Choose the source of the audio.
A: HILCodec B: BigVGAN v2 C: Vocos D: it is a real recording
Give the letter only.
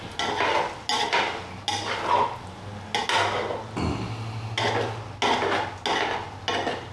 D